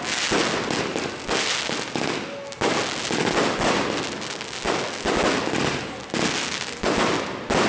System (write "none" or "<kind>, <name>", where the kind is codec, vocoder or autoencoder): none